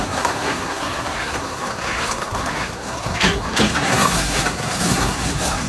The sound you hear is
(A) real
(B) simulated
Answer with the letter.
B